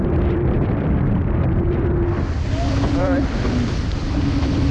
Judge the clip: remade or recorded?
remade